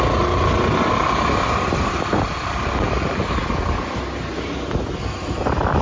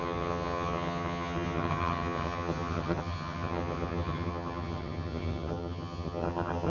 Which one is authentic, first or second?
first